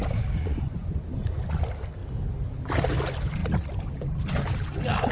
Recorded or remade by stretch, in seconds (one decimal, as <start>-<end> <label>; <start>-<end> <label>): 0.0-0.4 recorded; 0.4-1.6 remade; 1.6-5.1 recorded